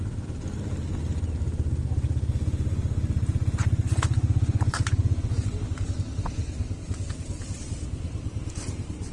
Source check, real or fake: real